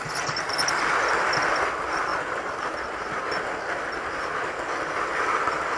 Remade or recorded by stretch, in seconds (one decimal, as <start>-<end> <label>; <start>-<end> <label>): 0.0-5.8 recorded